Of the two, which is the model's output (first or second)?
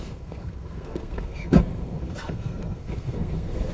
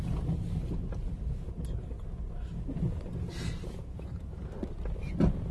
first